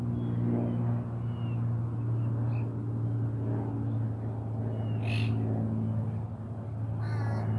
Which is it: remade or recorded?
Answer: recorded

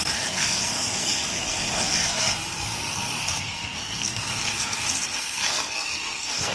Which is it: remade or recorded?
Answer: remade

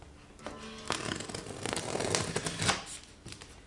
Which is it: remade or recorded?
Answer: recorded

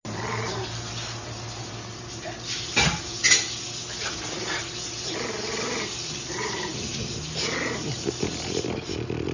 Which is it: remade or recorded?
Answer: recorded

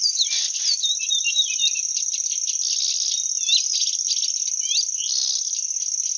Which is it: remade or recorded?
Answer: recorded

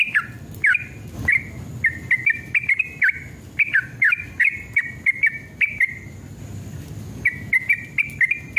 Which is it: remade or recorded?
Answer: recorded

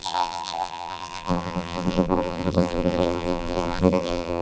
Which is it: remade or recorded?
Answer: remade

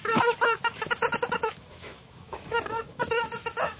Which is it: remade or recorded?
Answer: remade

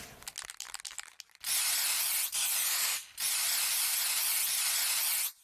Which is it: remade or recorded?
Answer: recorded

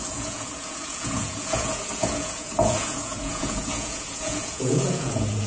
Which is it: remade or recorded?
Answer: remade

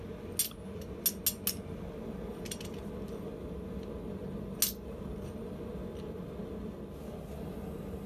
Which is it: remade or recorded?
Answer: recorded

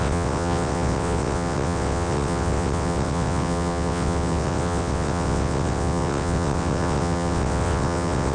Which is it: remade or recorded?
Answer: remade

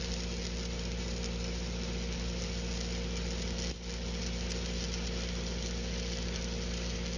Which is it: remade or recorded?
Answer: recorded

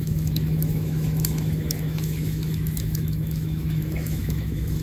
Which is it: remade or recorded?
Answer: remade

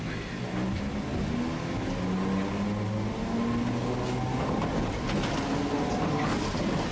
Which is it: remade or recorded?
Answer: recorded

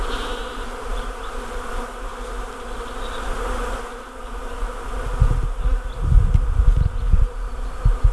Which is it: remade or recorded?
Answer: recorded